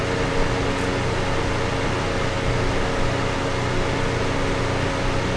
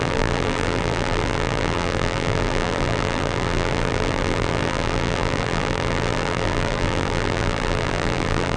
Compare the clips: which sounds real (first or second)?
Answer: first